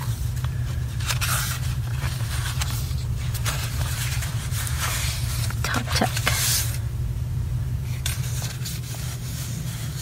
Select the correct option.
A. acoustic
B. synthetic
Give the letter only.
B